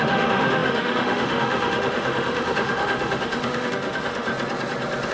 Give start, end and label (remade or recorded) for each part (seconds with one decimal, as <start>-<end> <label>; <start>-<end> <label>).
0.0-4.3 remade; 4.3-5.1 recorded